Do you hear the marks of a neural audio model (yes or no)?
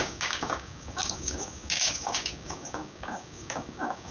yes